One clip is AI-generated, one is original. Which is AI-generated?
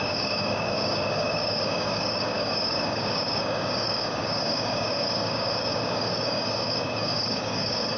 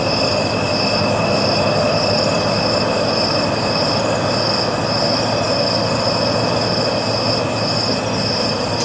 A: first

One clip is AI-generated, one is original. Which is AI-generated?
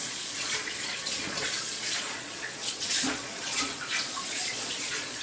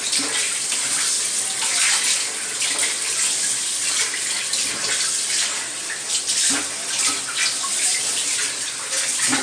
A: first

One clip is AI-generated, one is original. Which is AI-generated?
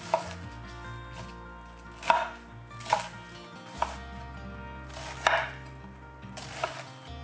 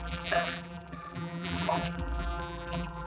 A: second